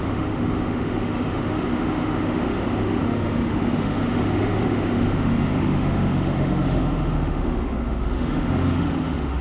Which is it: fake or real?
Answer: fake